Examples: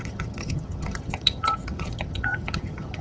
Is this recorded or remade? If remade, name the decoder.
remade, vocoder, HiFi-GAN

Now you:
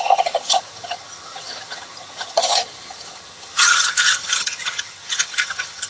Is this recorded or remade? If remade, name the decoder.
remade, vocoder, HiFi-GAN